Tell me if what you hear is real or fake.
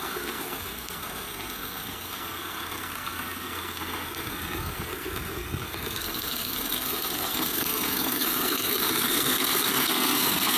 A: fake